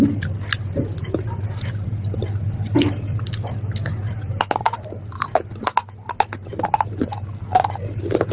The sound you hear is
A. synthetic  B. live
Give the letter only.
B